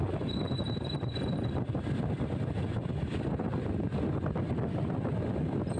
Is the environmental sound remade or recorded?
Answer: recorded